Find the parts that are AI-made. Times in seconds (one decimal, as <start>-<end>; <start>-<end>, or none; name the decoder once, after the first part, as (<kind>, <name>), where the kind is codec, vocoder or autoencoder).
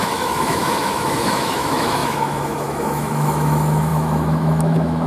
0.0-5.1 (autoencoder, DAC-VAE)